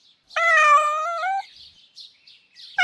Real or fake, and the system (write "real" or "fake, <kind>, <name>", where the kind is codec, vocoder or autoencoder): real